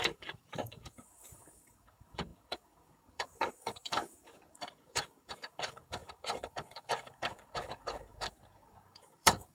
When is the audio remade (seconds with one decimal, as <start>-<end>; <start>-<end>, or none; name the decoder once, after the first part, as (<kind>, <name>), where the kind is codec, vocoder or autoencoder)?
0.0-9.5 (codec, DAC)